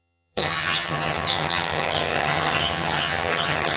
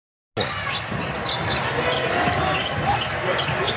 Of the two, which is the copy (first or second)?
first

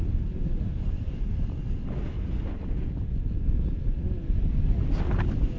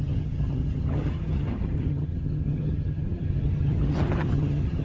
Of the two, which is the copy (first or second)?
second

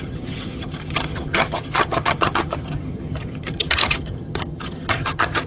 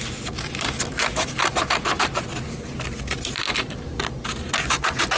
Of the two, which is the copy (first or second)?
first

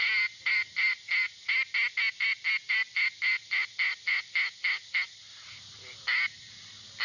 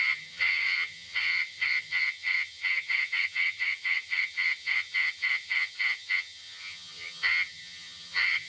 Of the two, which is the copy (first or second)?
second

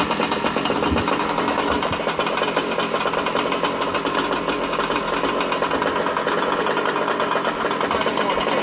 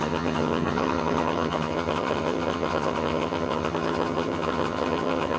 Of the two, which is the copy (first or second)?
second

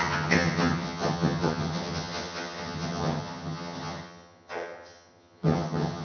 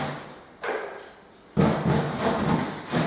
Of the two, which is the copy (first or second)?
first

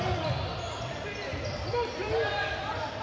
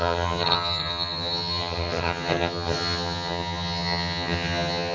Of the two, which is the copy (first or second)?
second